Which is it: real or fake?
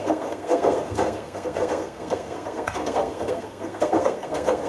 fake